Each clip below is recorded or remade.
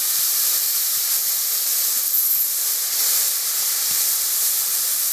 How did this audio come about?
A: recorded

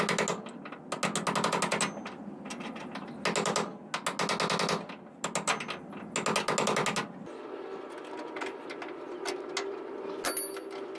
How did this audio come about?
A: recorded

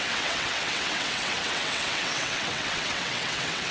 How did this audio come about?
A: remade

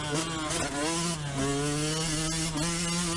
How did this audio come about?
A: recorded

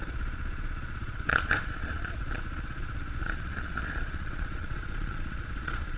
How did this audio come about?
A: remade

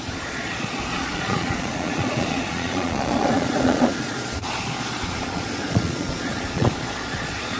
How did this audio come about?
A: remade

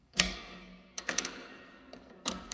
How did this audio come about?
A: remade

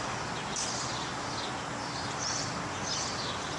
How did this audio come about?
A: recorded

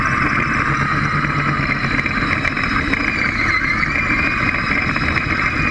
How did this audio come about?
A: recorded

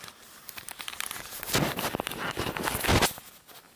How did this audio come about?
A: recorded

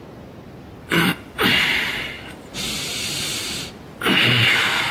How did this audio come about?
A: recorded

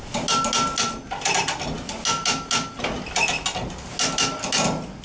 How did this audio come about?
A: recorded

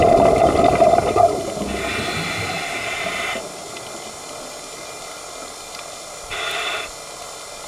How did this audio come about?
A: recorded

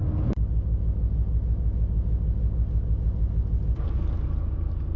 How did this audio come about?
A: recorded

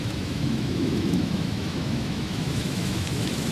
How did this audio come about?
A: remade